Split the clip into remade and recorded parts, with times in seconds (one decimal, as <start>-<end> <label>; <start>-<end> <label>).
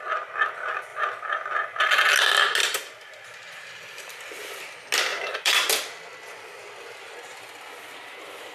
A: 0.0-2.6 recorded; 2.6-4.6 remade; 4.6-5.1 recorded; 5.1-5.7 remade; 5.7-8.5 recorded